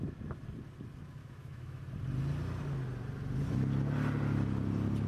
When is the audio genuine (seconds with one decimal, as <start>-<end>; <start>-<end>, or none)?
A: 0.0-1.2; 1.8-5.1